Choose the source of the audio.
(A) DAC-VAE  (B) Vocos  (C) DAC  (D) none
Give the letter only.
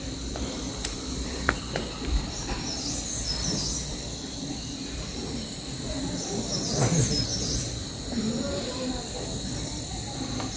D